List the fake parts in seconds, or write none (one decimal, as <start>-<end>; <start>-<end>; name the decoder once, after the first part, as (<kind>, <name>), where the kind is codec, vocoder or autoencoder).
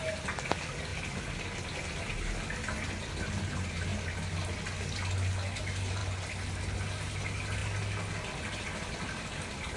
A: none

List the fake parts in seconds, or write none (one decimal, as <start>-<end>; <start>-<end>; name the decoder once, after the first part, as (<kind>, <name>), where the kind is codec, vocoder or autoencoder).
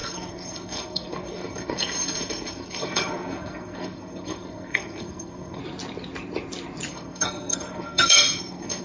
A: 0.0-5.6 (codec, SNAC); 6.9-8.8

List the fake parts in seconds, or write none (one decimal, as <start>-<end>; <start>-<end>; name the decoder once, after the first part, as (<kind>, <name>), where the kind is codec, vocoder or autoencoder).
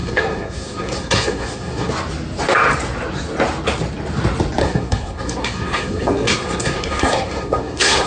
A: 0.0-1.9 (codec, SNAC); 4.6-8.1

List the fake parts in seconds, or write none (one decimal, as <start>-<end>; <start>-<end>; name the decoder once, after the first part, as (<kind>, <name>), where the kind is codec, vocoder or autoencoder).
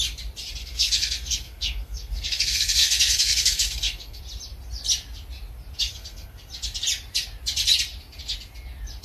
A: 0.6-4.2 (codec, SNAC); 5.9-6.5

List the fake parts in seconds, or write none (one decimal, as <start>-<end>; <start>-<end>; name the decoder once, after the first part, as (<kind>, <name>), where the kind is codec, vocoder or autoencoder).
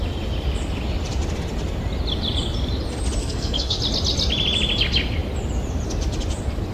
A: 3.2-3.8 (codec, SNAC)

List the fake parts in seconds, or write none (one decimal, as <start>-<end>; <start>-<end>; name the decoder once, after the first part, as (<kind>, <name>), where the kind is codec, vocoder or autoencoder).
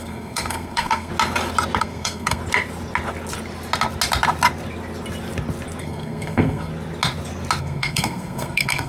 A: 0.0-1.1 (codec, SNAC); 1.8-2.4; 5.8-6.7; 7.6-8.9